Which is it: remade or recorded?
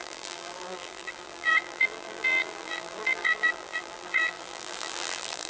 remade